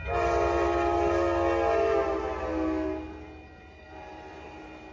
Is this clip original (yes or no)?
yes